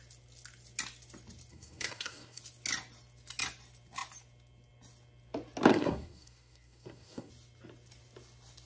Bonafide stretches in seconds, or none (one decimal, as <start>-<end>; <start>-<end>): 0.0-1.5; 2.4-5.7; 7.3-8.7